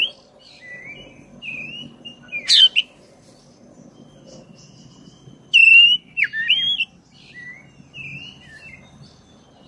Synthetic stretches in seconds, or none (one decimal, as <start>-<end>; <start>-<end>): none

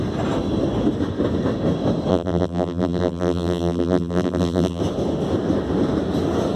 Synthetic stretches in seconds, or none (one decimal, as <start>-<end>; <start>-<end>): 2.1-4.8

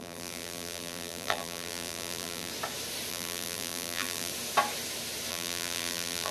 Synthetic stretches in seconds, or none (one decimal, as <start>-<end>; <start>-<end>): 0.0-2.5; 3.1-4.3; 5.3-6.3

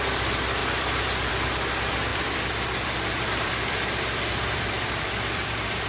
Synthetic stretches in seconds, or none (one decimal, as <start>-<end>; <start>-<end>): 2.1-5.9

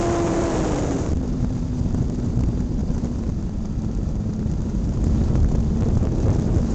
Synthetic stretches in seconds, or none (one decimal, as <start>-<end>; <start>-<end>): 0.0-6.7

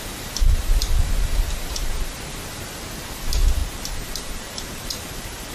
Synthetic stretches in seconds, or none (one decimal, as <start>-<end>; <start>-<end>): 3.6-5.5

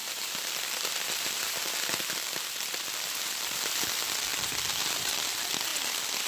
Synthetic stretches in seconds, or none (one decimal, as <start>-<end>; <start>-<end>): 0.0-3.8; 4.3-5.0